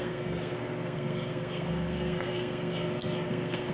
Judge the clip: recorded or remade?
remade